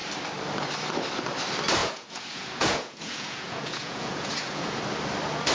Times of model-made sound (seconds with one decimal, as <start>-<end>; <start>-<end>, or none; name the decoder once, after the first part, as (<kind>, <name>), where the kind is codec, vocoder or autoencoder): 1.8-4.8 (vocoder, Vocos)